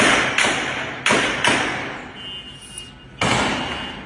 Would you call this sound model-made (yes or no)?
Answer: no